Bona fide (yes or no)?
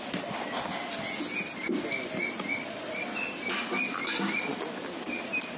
yes